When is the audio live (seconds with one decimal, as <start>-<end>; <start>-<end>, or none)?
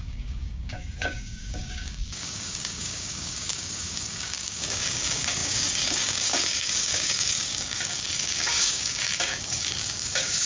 none